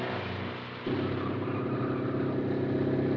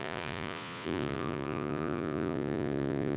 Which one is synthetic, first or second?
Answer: second